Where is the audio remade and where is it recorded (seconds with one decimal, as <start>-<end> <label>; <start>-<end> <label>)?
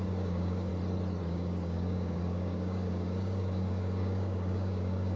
0.0-0.7 remade; 0.7-1.2 recorded; 1.2-5.2 remade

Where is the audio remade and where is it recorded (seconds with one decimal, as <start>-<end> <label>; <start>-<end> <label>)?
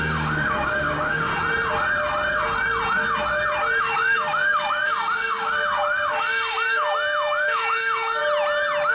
0.0-1.3 remade; 1.3-3.8 recorded; 3.8-8.2 remade; 8.2-8.9 recorded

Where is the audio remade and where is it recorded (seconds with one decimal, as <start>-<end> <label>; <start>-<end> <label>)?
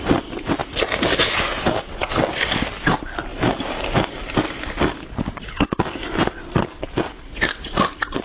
0.0-8.2 recorded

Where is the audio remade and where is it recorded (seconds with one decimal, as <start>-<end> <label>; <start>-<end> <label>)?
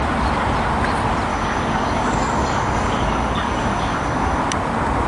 0.0-1.3 recorded; 1.3-4.4 remade; 4.4-5.1 recorded